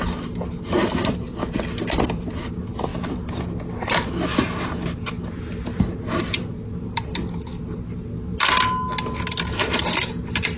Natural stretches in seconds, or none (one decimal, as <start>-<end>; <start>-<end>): 0.0-10.6

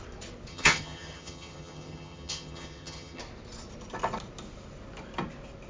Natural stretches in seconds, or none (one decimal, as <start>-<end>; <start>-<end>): 0.0-0.5; 3.2-5.7

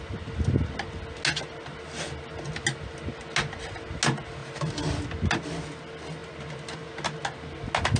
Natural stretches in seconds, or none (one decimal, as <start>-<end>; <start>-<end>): 0.0-8.0

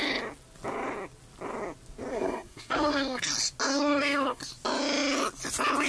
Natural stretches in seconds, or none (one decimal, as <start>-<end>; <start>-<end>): 0.0-2.1; 3.2-3.7; 4.4-5.9

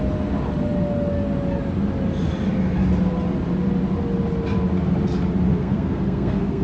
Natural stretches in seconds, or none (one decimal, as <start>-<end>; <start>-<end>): 0.0-5.5

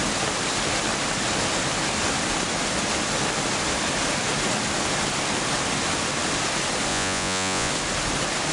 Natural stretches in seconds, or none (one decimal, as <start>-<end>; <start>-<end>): 0.0-6.9; 7.7-8.5

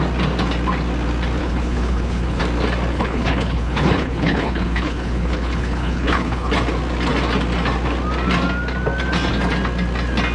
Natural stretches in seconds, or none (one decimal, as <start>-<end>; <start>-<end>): 0.0-1.4; 2.4-2.9; 6.5-10.3